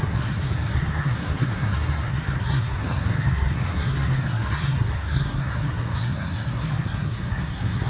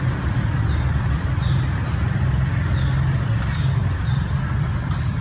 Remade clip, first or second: first